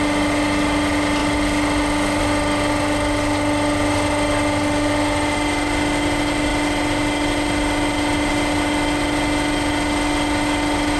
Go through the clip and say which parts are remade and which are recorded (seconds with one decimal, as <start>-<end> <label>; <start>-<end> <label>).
0.0-11.0 recorded